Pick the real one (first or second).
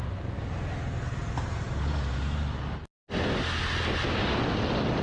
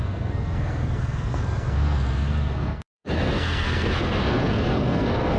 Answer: first